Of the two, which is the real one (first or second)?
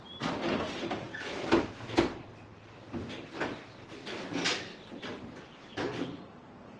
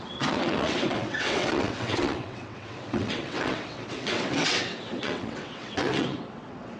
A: first